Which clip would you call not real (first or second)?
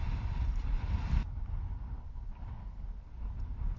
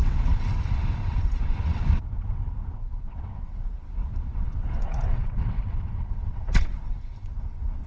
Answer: second